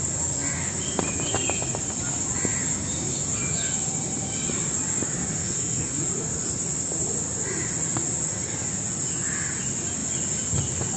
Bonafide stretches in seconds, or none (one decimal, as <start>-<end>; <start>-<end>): 0.0-5.4; 6.0-11.0

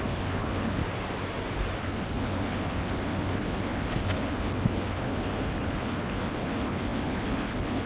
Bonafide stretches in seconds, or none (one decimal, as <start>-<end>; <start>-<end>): 0.8-1.8

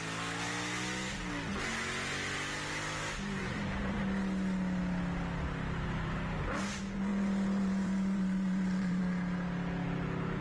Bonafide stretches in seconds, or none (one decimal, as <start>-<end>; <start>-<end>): 0.0-3.4; 4.0-7.1; 9.0-10.4